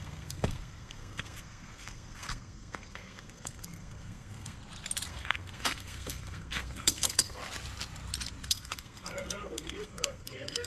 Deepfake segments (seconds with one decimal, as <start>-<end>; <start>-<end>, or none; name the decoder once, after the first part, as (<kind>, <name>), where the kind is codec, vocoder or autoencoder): 0.0-4.6 (codec, SNAC); 5.1-7.4; 8.5-10.7